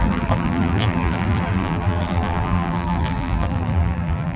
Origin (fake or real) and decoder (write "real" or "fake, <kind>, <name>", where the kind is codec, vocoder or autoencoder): fake, vocoder, BigVGAN v2